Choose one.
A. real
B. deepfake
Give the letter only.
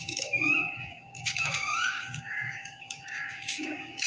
B